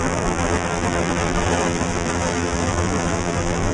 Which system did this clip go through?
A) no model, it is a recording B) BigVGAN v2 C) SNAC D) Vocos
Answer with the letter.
B